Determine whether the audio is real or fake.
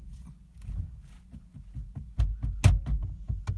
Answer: real